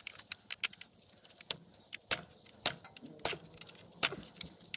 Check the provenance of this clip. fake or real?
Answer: real